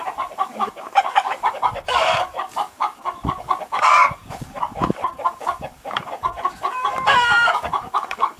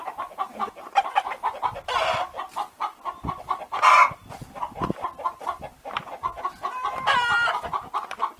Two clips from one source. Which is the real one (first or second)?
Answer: second